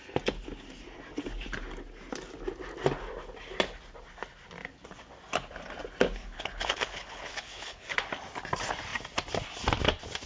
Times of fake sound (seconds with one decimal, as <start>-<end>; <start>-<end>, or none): 6.2-8.0